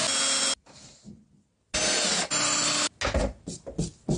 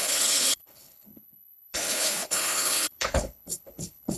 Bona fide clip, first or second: first